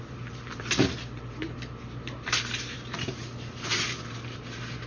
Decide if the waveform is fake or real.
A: fake